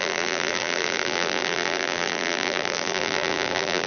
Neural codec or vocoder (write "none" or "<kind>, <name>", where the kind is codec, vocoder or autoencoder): vocoder, BigVGAN v2